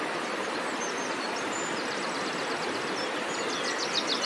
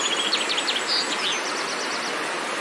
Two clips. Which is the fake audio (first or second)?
first